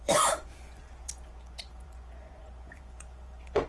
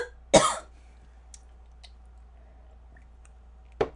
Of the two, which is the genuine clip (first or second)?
second